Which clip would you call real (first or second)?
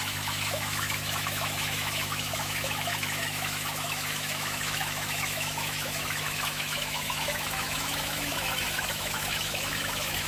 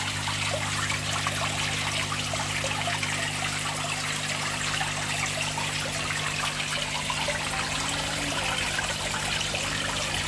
second